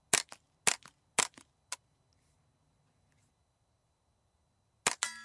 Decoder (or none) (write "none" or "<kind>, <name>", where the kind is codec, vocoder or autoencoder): none